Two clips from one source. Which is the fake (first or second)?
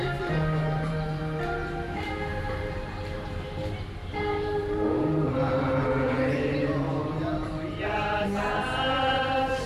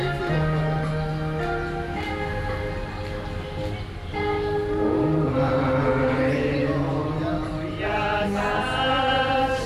first